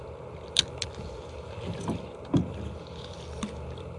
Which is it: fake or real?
real